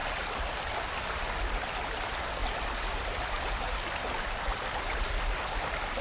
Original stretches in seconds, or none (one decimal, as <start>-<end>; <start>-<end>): 0.0-6.0